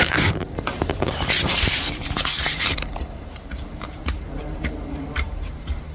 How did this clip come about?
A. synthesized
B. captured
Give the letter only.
A